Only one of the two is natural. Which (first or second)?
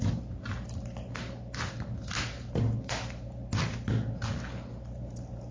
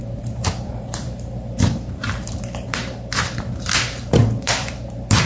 first